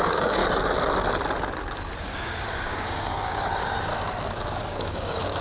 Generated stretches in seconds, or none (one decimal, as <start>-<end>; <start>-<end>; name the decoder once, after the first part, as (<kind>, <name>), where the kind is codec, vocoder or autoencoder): 0.0-0.4 (codec, DAC); 2.0-3.9; 4.6-5.4